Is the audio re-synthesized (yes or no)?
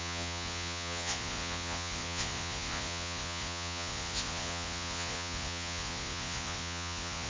yes